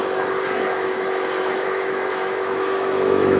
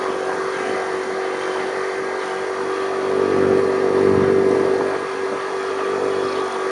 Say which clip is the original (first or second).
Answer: second